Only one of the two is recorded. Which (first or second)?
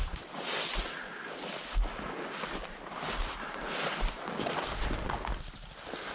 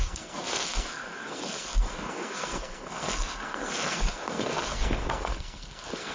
first